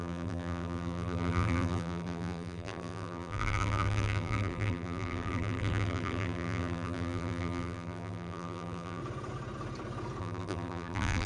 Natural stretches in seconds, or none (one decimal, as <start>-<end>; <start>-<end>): 9.0-10.2